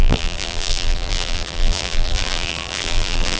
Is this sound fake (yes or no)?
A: yes